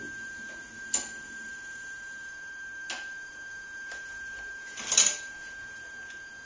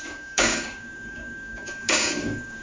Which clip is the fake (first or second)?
second